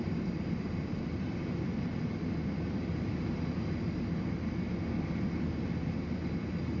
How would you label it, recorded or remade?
recorded